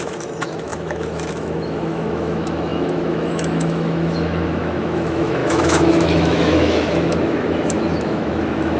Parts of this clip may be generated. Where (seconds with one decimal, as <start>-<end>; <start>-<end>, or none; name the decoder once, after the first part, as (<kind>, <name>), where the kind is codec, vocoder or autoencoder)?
0.0-8.8 (autoencoder, DAC-VAE)